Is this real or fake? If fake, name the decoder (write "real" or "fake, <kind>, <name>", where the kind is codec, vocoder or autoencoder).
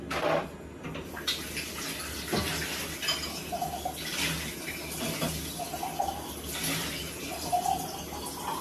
real